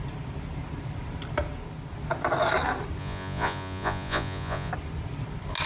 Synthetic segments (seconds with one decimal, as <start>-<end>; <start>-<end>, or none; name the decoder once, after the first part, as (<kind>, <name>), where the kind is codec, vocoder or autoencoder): 3.0-4.7 (vocoder, Vocos)